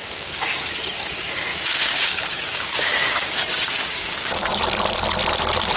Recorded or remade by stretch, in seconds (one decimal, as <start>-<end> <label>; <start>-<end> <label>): 0.0-0.7 remade; 0.7-1.5 recorded; 1.5-4.6 remade; 4.6-5.8 recorded